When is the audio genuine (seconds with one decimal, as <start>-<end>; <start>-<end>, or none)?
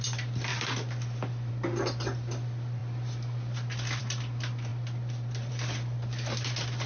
0.0-6.9